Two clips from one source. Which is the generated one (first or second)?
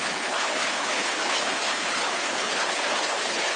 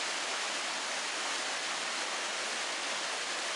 first